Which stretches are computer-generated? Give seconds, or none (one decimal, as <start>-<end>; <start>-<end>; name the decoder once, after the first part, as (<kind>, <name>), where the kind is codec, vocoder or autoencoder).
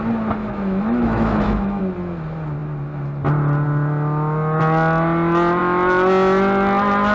0.4-1.8 (autoencoder, DAC-VAE)